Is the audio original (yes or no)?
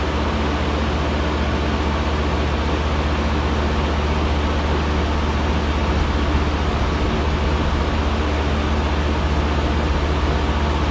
yes